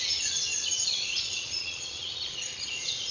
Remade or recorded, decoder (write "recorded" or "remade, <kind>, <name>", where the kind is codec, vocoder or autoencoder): remade, vocoder, Vocos